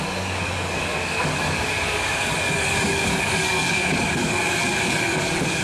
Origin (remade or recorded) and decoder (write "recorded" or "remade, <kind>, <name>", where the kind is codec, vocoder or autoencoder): remade, codec, DAC